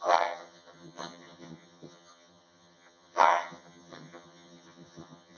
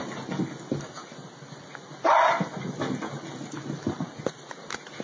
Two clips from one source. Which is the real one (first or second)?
second